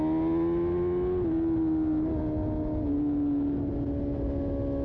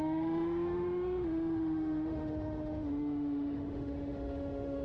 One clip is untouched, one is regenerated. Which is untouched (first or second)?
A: first